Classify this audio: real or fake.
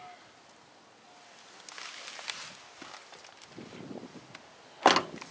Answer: real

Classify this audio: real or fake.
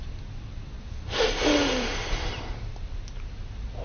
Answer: real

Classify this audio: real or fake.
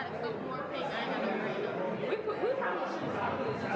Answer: real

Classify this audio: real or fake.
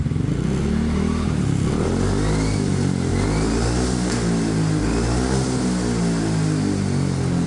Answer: real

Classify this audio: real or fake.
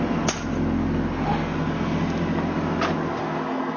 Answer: real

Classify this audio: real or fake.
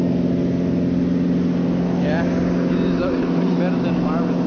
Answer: real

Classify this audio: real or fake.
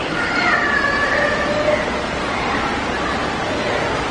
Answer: real